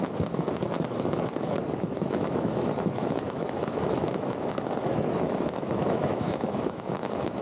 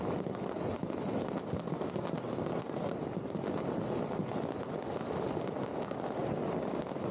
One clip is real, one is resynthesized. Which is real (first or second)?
second